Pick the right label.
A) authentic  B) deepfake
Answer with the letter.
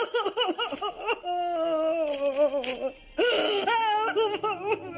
A